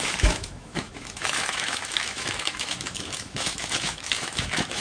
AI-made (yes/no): yes